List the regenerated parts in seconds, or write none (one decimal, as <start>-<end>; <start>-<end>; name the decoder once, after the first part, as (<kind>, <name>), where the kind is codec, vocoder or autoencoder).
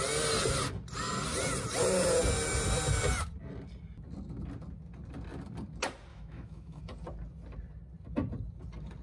6.1-6.8 (autoencoder, DAC-VAE)